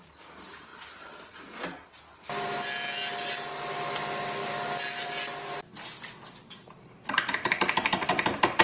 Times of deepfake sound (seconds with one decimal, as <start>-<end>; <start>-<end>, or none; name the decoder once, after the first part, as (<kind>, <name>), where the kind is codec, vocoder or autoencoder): none